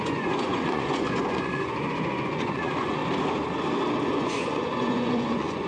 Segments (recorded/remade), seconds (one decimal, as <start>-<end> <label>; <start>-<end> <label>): 0.0-3.0 remade; 3.0-4.1 recorded; 4.1-5.7 remade